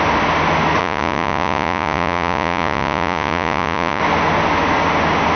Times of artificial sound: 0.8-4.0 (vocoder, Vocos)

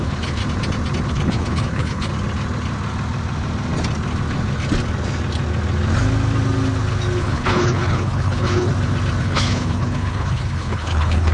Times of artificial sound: 0.0-0.4 (codec, HILCodec); 1.1-2.1; 7.2-8.7; 9.2-11.3